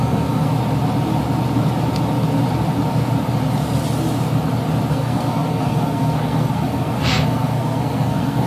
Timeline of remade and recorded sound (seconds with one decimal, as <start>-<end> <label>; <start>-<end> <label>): 0.0-0.5 remade; 0.5-4.9 recorded; 4.9-8.5 remade